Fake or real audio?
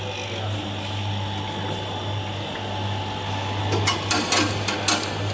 real